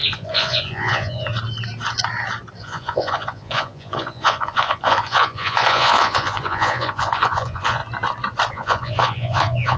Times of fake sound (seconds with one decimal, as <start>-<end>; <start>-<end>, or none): 0.0-1.3; 2.6-7.8; 8.5-9.8